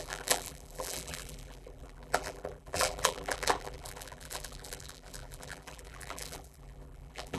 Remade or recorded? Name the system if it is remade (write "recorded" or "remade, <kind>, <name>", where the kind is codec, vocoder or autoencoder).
remade, vocoder, BigVGAN v2